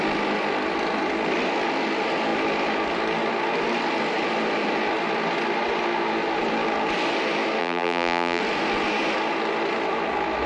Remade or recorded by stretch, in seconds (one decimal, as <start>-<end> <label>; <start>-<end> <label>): 0.0-7.6 recorded; 7.6-8.4 remade; 8.4-10.5 recorded

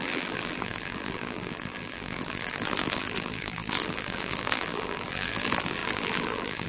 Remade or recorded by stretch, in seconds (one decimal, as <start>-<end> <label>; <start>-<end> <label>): 0.0-6.7 remade

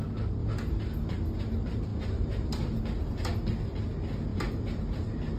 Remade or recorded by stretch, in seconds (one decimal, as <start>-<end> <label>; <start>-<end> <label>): 0.0-1.9 recorded; 1.9-2.8 remade; 2.8-4.3 recorded; 4.3-4.8 remade; 4.8-5.4 recorded

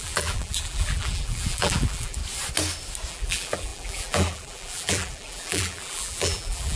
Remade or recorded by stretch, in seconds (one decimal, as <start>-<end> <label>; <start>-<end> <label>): 0.0-2.2 remade; 2.2-3.1 recorded; 3.1-6.8 remade

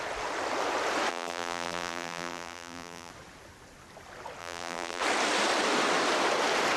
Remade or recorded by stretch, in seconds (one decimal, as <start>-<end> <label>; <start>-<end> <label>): 0.0-1.1 recorded; 1.1-3.1 remade; 3.1-4.4 recorded; 4.4-5.0 remade; 5.0-6.8 recorded

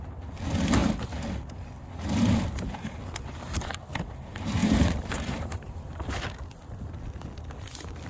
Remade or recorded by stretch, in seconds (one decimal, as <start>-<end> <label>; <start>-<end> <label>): 0.0-4.6 recorded; 4.6-6.1 remade; 6.1-8.1 recorded

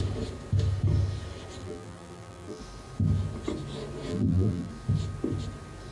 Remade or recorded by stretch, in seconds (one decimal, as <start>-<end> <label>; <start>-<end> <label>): 0.0-1.6 recorded; 1.6-2.6 remade; 2.6-4.1 recorded; 4.1-4.7 remade; 4.7-5.9 recorded

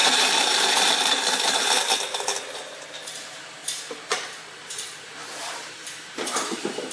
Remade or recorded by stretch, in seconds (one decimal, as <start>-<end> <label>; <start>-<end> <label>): 0.0-1.6 remade; 1.6-2.7 recorded; 2.7-6.9 remade